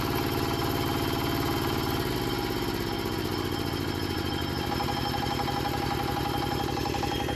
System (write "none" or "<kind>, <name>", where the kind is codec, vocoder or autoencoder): none